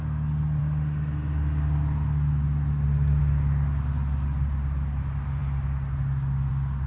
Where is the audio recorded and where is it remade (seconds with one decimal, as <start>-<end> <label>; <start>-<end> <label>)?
0.0-6.9 recorded